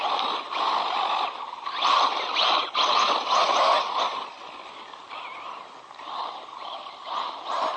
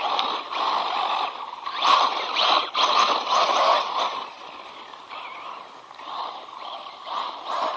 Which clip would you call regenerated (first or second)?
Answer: second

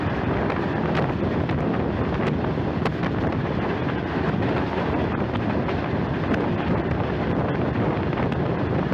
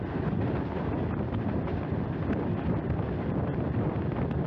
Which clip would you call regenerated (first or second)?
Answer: second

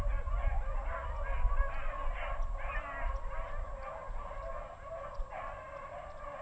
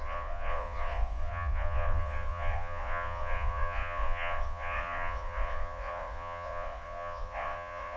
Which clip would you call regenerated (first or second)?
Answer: second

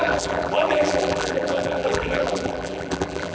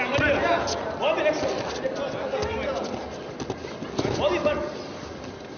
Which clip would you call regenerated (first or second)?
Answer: first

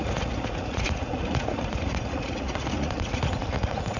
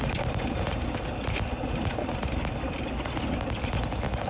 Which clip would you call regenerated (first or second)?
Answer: first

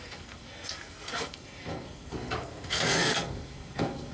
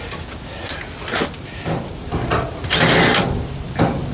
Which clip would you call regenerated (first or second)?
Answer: first